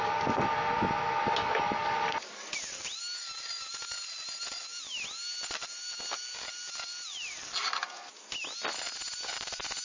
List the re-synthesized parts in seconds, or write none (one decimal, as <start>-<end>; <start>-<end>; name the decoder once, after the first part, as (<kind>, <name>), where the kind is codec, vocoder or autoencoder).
none